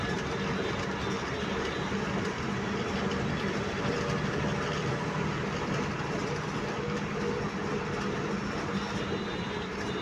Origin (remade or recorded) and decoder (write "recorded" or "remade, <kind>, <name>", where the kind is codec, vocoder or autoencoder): recorded